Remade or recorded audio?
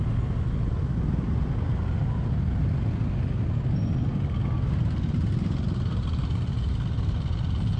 recorded